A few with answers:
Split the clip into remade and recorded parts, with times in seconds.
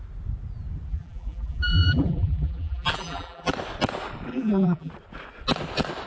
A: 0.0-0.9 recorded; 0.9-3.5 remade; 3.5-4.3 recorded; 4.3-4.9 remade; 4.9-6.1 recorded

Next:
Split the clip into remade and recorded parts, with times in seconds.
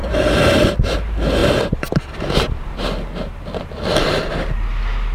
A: 0.0-0.7 remade; 0.7-5.1 recorded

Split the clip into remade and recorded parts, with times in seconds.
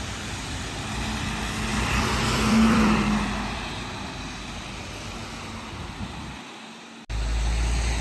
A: 0.0-1.7 recorded; 1.7-3.7 remade; 3.7-8.0 recorded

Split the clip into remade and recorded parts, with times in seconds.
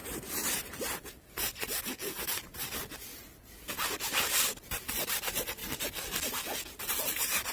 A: 0.0-1.8 remade; 1.8-7.5 recorded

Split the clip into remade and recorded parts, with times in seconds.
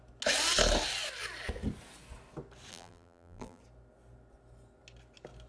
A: 0.0-2.7 recorded; 2.7-3.6 remade; 3.6-5.5 recorded